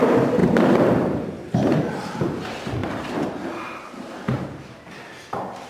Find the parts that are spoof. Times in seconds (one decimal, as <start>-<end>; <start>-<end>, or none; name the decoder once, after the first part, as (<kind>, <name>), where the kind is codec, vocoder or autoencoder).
0.4-1.2 (vocoder, BigVGAN v2); 2.8-4.8